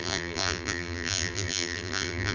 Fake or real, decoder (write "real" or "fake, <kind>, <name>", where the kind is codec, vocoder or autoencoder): fake, vocoder, BigVGAN v2